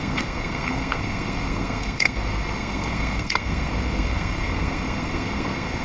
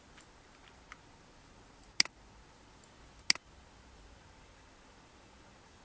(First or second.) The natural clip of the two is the second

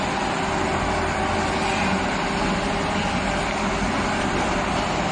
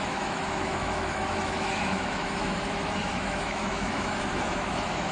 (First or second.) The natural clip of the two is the first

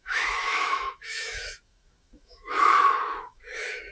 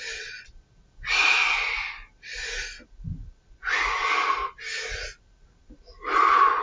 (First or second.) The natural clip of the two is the second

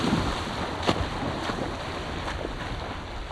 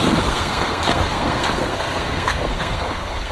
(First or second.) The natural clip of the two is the first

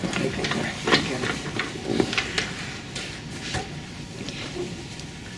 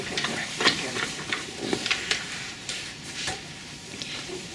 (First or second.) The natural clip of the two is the first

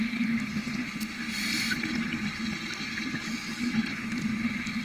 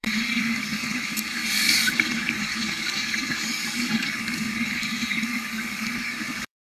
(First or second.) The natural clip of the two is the first